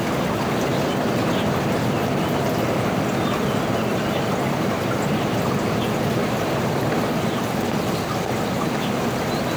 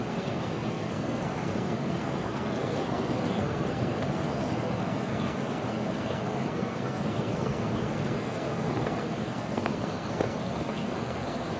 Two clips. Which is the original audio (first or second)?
first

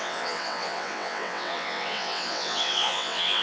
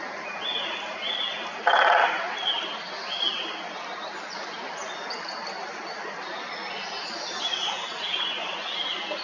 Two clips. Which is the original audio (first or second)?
second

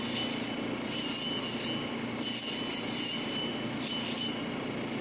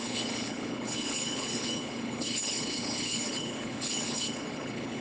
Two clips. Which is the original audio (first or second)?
first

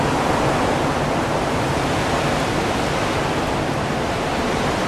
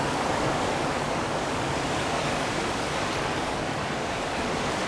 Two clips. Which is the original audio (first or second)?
first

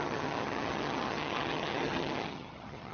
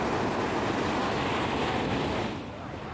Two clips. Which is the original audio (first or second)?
second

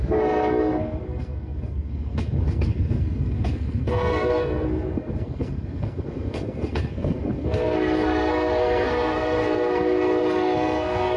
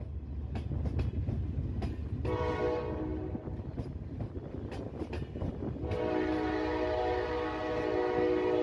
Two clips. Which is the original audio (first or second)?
second